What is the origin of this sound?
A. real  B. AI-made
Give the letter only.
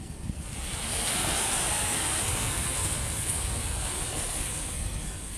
B